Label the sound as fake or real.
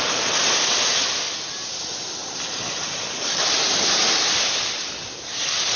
real